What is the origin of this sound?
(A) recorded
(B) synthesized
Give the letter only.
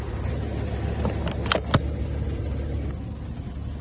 A